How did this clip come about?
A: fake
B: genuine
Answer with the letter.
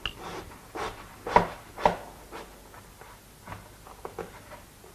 B